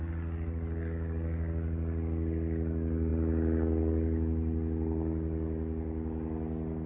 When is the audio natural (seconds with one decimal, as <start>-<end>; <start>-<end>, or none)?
0.0-6.9